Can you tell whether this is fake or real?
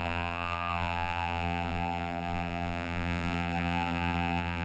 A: fake